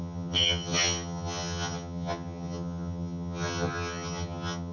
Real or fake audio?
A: fake